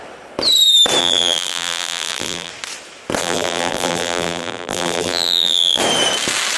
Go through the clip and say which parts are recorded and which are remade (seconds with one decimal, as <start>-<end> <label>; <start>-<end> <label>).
0.0-1.0 recorded; 1.0-2.5 remade; 2.5-3.2 recorded; 3.2-5.8 remade; 5.8-6.6 recorded

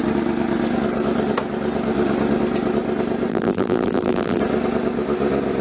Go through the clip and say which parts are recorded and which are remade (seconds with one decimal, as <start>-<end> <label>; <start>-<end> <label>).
0.0-3.3 recorded; 3.3-4.4 remade; 4.4-5.6 recorded

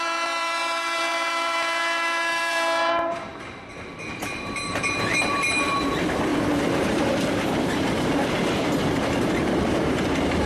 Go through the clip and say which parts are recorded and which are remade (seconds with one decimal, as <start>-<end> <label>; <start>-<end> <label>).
0.0-3.3 remade; 3.3-4.1 recorded; 4.1-10.5 remade

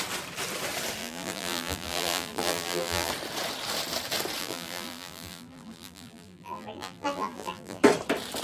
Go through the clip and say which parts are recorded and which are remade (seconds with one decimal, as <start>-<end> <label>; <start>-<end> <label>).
0.0-1.0 recorded; 1.0-3.1 remade; 3.1-4.4 recorded; 4.4-7.8 remade; 7.8-8.4 recorded

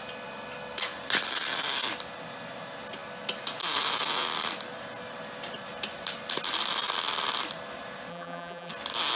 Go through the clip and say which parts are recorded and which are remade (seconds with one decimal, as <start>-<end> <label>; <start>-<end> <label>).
0.0-8.1 recorded; 8.1-8.7 remade; 8.7-9.2 recorded

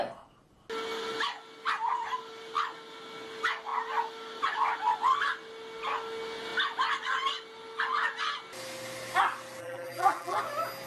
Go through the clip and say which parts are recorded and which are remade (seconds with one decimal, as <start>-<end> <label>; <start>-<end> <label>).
0.0-9.6 recorded; 9.6-10.4 remade; 10.4-10.9 recorded

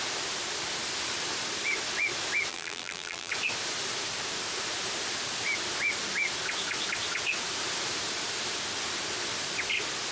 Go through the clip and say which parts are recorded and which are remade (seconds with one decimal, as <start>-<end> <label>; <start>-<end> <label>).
0.0-2.5 recorded; 2.5-3.3 remade; 3.3-10.1 recorded

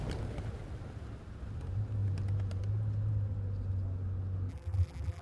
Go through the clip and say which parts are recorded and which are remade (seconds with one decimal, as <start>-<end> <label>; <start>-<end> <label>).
0.0-4.5 recorded; 4.5-5.2 remade